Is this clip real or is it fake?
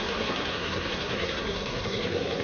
fake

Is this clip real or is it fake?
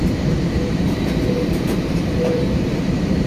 fake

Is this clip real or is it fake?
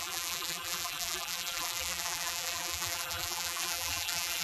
fake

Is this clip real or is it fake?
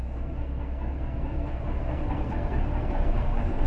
fake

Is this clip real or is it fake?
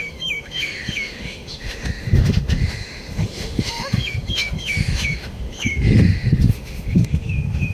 fake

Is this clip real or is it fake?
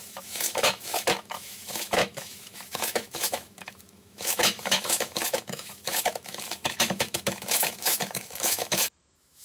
fake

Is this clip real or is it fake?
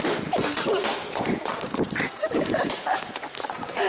fake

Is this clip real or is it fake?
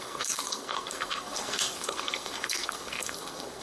fake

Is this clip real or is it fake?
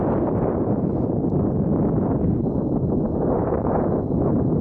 real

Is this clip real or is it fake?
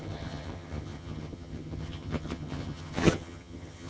fake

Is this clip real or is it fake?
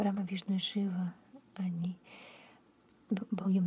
fake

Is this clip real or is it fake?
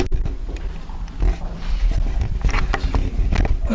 real